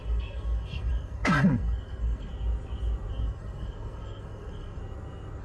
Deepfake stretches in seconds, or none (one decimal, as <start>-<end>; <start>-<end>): 0.0-2.3; 3.1-4.8